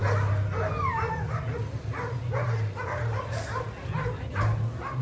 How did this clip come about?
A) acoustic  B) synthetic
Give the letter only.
A